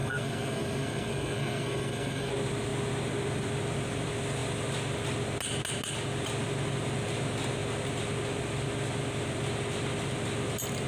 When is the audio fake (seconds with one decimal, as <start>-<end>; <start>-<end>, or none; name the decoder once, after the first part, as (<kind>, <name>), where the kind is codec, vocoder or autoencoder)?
0.0-2.3 (codec, SNAC)